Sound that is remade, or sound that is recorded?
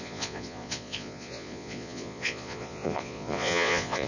remade